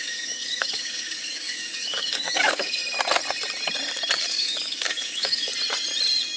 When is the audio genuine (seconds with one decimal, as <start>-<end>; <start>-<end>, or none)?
2.8-4.3; 5.5-6.4